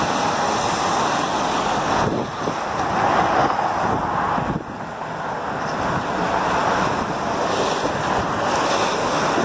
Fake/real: real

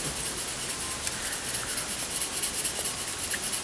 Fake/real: real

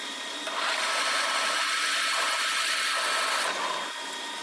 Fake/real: real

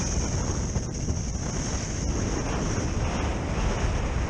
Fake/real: real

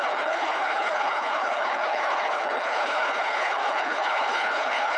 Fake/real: fake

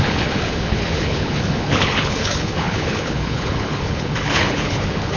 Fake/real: fake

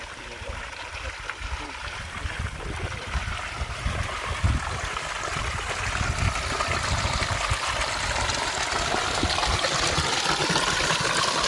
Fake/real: real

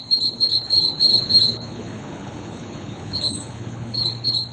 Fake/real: fake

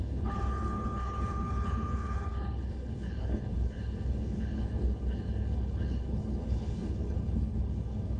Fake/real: fake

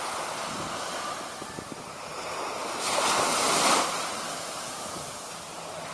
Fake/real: real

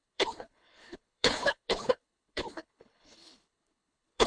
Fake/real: fake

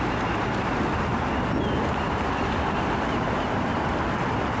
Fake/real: real